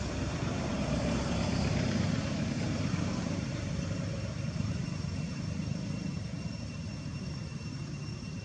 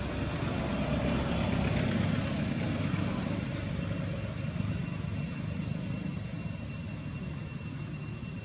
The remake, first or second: first